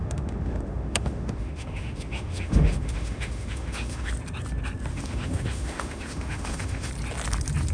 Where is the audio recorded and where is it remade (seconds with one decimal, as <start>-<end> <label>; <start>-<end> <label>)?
0.0-4.1 remade; 4.1-4.9 recorded; 4.9-6.9 remade; 6.9-7.7 recorded